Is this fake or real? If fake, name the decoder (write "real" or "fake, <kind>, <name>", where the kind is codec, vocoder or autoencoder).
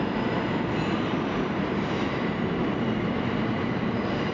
real